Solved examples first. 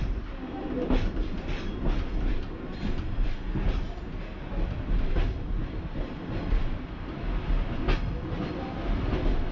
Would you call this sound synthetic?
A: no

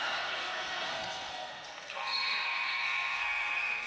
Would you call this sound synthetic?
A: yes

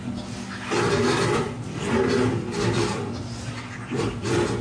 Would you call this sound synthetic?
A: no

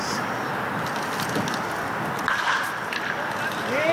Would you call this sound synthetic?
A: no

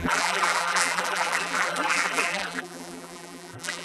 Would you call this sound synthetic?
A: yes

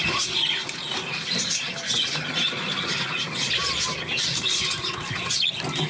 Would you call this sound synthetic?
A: no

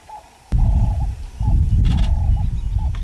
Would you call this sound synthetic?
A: no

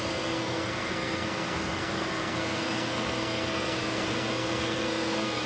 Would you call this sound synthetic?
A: yes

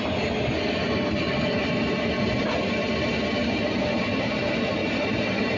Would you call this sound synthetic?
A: no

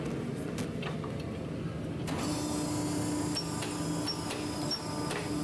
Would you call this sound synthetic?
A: no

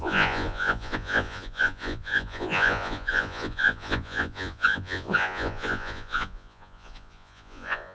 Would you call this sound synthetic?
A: yes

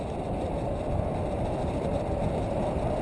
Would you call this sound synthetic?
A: no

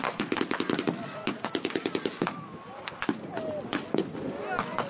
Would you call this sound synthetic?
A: no